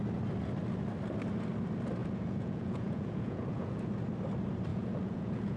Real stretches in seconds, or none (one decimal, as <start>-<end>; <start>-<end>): 0.0-2.0; 3.9-4.7